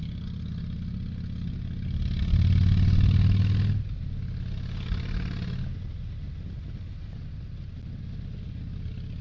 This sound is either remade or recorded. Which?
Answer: recorded